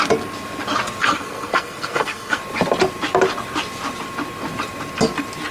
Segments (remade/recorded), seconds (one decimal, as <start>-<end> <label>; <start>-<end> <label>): 0.0-1.0 recorded; 1.0-2.4 remade; 2.4-5.5 recorded